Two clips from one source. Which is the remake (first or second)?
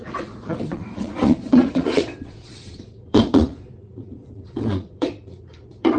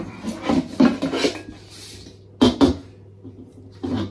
first